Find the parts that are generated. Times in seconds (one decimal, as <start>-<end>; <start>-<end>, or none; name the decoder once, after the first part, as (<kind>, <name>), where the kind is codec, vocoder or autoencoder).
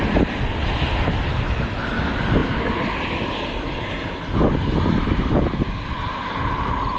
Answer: none